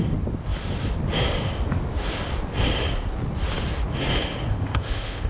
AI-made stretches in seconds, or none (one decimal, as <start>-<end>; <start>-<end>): 4.5-5.3